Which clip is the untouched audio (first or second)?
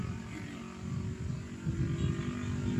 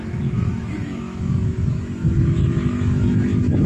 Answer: first